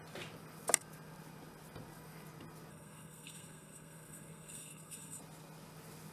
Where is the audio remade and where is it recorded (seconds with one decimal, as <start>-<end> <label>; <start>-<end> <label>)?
0.0-2.7 recorded; 2.7-5.2 remade; 5.2-6.1 recorded